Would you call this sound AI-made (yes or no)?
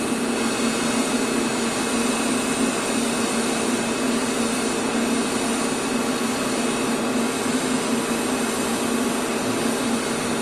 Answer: no